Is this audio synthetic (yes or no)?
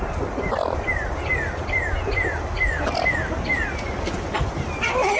no